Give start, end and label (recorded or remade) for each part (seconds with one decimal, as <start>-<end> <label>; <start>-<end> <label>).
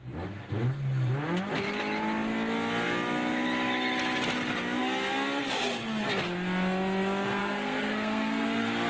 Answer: 0.0-7.4 recorded; 7.4-8.9 remade